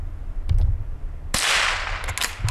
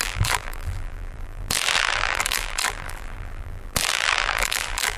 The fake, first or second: second